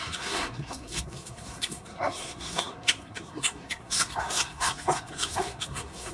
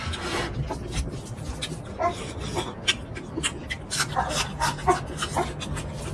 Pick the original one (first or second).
second